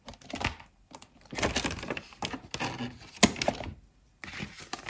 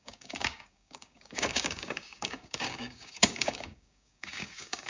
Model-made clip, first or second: second